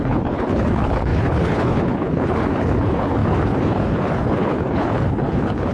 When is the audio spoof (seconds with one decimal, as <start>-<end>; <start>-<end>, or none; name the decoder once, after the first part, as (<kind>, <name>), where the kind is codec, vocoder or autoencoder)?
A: 0.0-5.7 (codec, HILCodec)